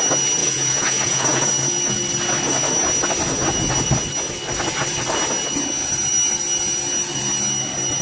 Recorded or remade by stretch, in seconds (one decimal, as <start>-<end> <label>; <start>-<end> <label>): 0.0-0.4 recorded; 0.4-1.5 remade; 1.5-8.0 recorded